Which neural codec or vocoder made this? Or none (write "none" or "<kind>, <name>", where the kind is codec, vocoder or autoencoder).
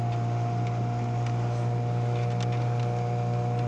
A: none